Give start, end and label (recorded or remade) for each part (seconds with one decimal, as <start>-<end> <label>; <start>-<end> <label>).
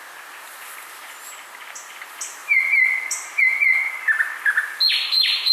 0.0-3.8 remade; 3.8-4.9 recorded; 4.9-5.5 remade